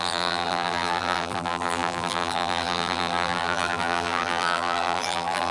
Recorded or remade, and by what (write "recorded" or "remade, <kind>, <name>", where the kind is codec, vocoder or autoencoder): remade, vocoder, BigVGAN v2